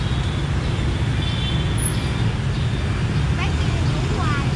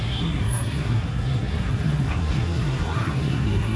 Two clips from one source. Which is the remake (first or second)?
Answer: second